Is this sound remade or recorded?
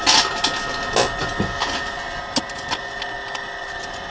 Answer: recorded